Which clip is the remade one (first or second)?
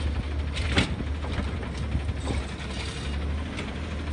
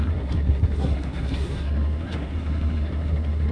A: second